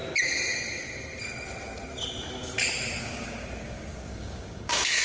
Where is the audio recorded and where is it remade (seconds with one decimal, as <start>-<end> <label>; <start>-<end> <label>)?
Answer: 0.0-3.0 recorded; 3.0-5.0 remade